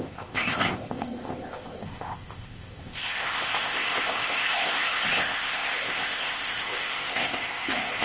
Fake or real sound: fake